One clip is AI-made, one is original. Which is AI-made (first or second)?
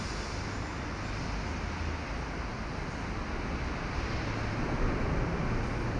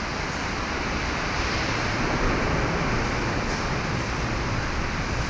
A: second